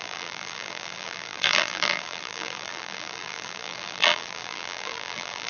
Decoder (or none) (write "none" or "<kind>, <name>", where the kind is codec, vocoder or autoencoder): vocoder, BigVGAN v2